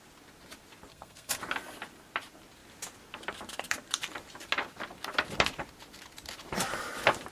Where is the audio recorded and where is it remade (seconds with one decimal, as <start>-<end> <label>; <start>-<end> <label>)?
0.0-0.9 recorded; 0.9-1.4 remade; 1.4-7.3 recorded